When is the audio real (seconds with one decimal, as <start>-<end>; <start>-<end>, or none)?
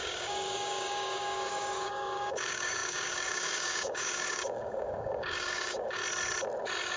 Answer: 6.0-7.0